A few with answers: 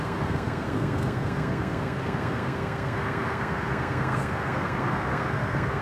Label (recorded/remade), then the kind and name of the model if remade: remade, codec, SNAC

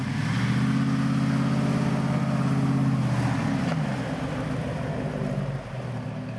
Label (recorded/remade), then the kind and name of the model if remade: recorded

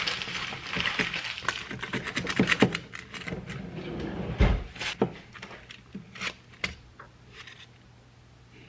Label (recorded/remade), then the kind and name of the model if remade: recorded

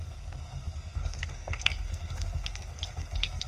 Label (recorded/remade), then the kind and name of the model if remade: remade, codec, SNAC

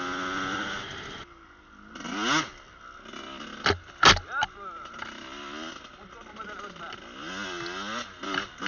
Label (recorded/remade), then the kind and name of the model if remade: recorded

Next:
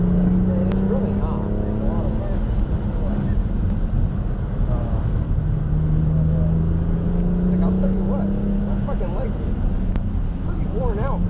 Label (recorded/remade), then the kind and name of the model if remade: recorded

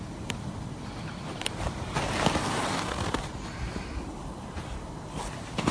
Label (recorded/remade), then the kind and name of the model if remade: recorded